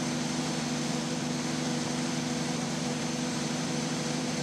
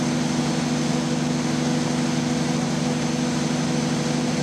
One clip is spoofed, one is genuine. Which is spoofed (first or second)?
first